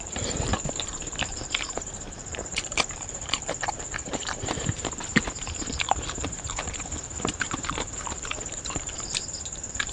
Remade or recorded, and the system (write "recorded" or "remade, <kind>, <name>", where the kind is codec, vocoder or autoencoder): remade, vocoder, BigVGAN v2